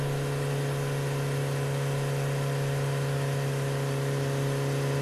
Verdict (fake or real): real